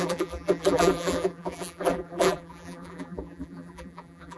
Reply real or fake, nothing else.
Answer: fake